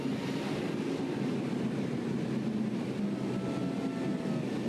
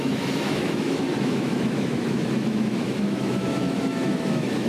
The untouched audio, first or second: first